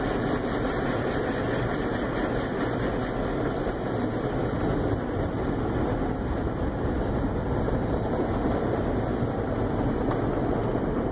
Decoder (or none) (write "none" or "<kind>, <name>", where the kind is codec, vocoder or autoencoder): none